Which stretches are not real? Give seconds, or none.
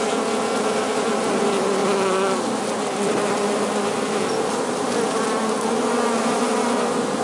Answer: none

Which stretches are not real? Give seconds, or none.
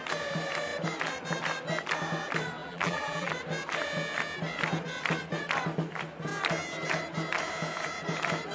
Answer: 2.6-3.3 (vocoder, BigVGAN v2)